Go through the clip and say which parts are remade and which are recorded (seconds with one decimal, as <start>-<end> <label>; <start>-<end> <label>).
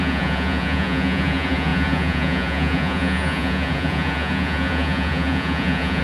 0.0-6.0 remade